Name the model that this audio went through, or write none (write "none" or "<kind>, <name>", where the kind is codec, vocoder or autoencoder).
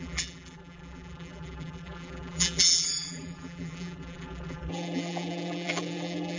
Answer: vocoder, BigVGAN v2